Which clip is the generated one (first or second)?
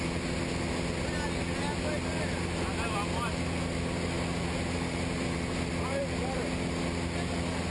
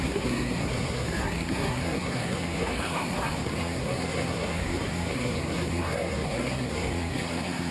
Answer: second